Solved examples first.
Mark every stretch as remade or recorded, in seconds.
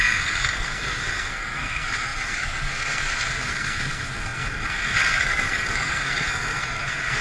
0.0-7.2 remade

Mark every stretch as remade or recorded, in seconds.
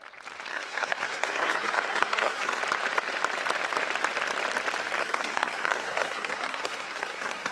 0.0-0.5 recorded; 0.5-2.6 remade; 2.6-5.0 recorded; 5.0-7.5 remade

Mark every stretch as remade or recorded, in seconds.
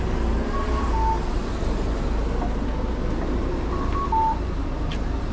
0.0-5.3 recorded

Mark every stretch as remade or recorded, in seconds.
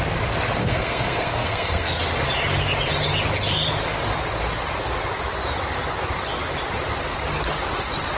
0.0-0.6 recorded; 0.6-2.0 remade; 2.0-8.2 recorded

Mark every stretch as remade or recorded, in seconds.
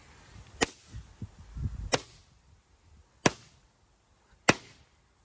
0.0-5.2 recorded